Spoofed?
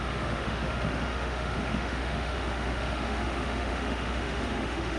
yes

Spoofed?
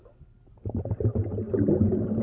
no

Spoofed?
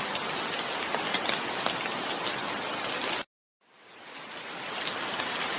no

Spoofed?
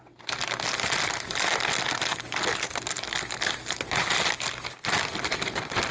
no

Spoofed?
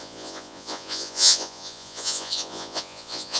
yes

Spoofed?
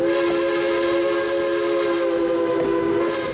no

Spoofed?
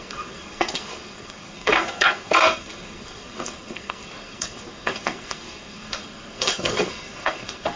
yes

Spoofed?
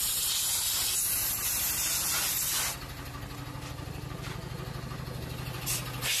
no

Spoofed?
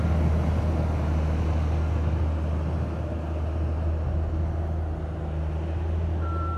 no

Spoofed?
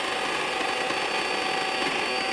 no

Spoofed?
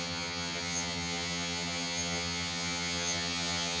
yes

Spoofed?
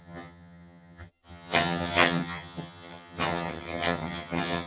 yes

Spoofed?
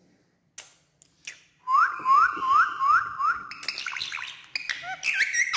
no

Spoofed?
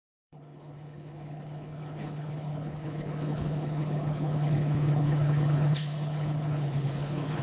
yes